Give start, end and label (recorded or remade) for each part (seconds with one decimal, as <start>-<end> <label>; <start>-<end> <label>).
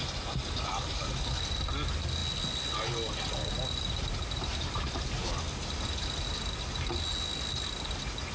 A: 0.0-8.3 recorded